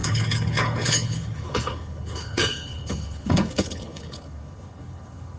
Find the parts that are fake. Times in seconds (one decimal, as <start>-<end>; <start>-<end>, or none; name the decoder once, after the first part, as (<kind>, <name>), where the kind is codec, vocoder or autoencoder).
0.0-5.4 (codec, HILCodec)